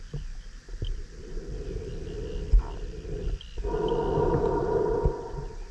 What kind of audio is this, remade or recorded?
recorded